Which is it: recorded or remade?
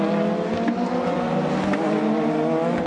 recorded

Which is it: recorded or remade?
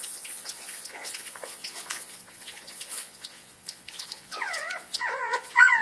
remade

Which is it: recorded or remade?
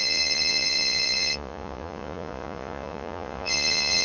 remade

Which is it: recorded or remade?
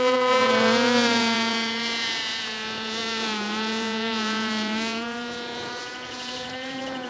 remade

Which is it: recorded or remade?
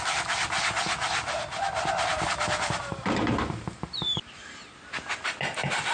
recorded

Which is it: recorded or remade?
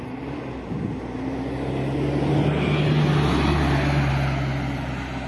recorded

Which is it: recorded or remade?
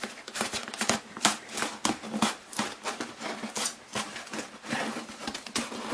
recorded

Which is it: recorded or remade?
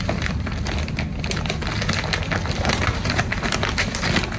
recorded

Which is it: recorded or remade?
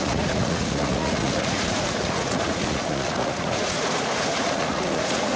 remade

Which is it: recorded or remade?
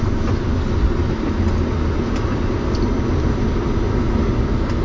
recorded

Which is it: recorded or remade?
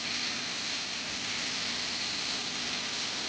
recorded